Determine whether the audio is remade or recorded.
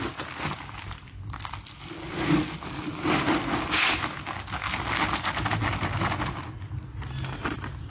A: recorded